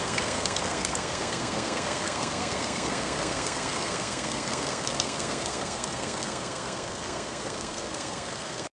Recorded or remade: remade